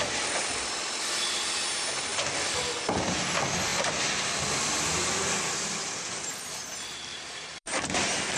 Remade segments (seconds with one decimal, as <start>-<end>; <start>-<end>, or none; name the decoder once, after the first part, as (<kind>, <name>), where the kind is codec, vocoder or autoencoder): 2.1-2.7 (vocoder, BigVGAN v2); 3.7-6.0; 7.1-8.4